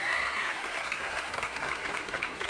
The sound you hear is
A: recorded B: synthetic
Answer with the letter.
B